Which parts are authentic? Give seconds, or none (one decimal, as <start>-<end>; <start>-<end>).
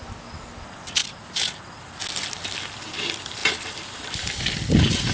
0.0-1.0; 2.0-3.4